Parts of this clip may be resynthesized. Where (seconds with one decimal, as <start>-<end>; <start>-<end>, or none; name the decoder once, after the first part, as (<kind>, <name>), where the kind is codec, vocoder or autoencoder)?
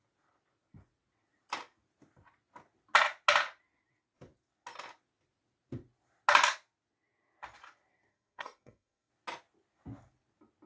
8.1-9.1 (codec, SNAC)